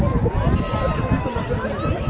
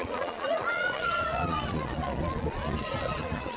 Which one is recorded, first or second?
first